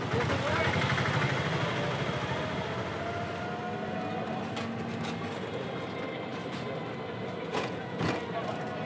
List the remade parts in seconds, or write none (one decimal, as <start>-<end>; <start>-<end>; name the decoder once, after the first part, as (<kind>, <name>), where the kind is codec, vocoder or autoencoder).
7.5-8.2 (vocoder, Vocos)